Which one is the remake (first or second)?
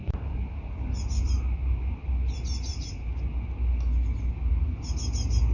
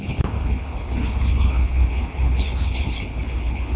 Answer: second